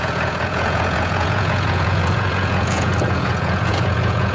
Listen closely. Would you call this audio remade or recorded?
remade